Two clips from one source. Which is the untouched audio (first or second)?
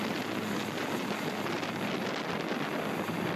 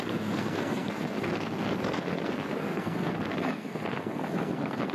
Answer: first